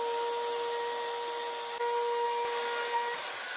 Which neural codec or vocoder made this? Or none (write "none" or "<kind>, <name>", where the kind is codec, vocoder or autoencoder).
none